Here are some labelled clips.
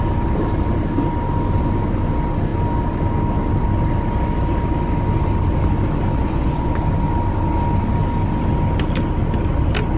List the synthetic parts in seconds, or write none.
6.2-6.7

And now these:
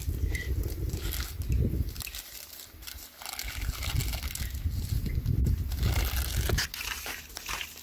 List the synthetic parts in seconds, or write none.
none

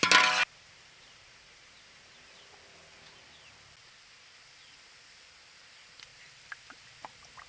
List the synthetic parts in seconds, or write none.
0.4-2.3; 6.1-7.0

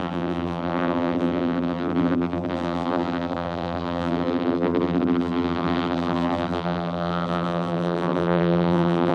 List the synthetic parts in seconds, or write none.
0.0-9.1

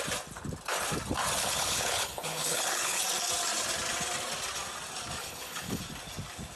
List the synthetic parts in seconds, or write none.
1.4-3.0; 5.2-5.8